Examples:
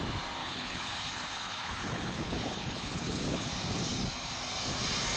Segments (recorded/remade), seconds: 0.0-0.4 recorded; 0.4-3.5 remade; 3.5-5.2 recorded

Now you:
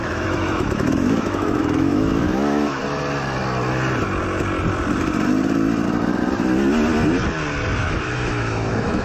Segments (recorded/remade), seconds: 0.0-2.8 remade; 2.8-7.8 recorded; 7.8-9.0 remade

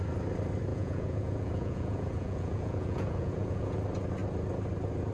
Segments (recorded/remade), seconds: 0.0-0.7 recorded; 0.7-3.8 remade; 3.8-5.1 recorded

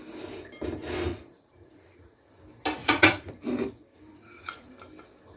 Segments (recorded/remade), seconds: 0.0-1.1 recorded; 1.1-2.3 remade; 2.3-2.8 recorded; 2.8-3.3 remade; 3.3-4.1 recorded; 4.1-4.7 remade; 4.7-5.4 recorded

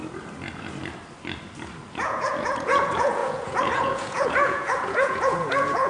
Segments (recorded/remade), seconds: 0.0-1.9 recorded; 1.9-5.9 remade

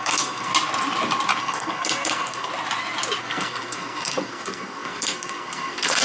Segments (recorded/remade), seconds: 0.0-0.5 remade; 0.5-1.4 recorded; 1.4-2.5 remade; 2.5-3.2 recorded; 3.2-6.0 remade

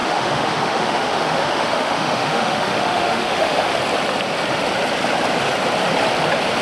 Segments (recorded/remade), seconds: 0.0-3.8 remade; 3.8-6.6 recorded

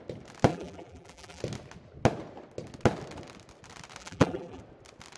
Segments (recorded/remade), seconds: 0.0-0.5 recorded; 0.5-1.4 remade; 1.4-4.0 recorded; 4.0-4.6 remade; 4.6-5.2 recorded